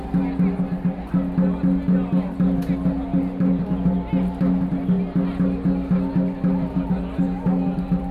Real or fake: real